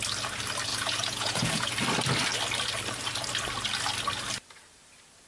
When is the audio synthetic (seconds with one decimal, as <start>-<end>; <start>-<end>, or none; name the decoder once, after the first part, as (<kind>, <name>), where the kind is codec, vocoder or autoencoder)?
0.7-1.7 (vocoder, Vocos)